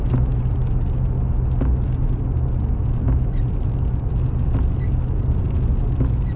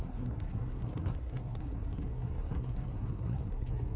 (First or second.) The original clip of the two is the first